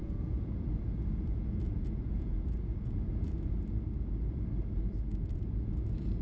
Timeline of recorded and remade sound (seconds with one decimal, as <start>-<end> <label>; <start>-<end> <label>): 0.0-3.5 remade; 3.5-5.1 recorded; 5.1-5.8 remade; 5.8-6.2 recorded